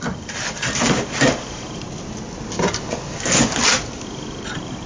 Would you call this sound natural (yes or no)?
yes